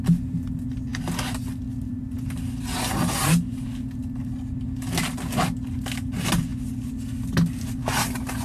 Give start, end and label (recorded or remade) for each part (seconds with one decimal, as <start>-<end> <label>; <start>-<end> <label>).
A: 0.0-8.4 recorded